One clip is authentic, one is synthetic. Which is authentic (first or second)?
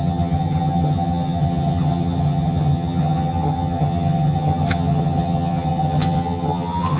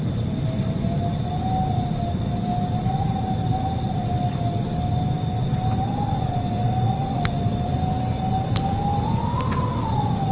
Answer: second